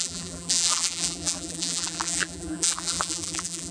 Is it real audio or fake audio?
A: fake